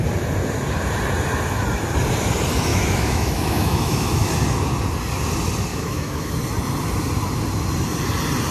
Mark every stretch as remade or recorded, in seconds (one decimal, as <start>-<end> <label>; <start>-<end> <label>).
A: 0.0-2.7 recorded; 2.7-4.3 remade; 4.3-5.7 recorded; 5.7-6.3 remade; 6.3-8.5 recorded